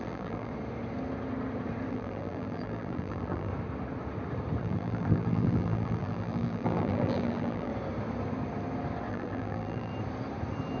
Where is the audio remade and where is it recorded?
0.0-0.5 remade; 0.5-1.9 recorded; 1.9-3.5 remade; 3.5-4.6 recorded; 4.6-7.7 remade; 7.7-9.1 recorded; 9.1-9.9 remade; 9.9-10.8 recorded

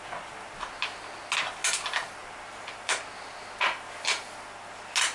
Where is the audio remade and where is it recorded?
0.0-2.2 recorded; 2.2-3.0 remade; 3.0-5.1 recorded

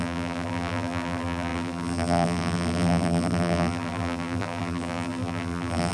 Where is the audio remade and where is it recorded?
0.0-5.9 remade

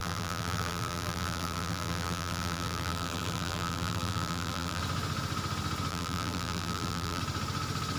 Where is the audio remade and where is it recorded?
0.0-4.8 remade; 4.8-5.9 recorded; 5.9-7.2 remade; 7.2-8.0 recorded

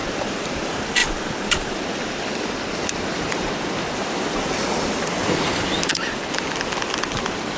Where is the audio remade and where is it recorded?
0.0-0.6 remade; 0.6-1.0 recorded; 1.0-5.6 remade; 5.6-7.6 recorded

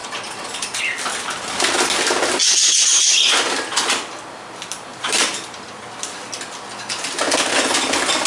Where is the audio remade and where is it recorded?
0.0-4.9 recorded; 4.9-5.9 remade; 5.9-8.3 recorded

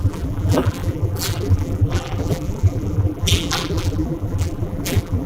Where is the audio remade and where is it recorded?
0.0-5.3 remade

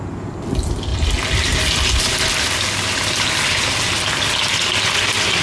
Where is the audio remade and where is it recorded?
0.0-5.4 recorded